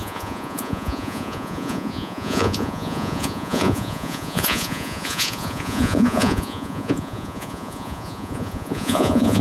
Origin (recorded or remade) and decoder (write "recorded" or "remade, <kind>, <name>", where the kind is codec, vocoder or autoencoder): remade, vocoder, Vocos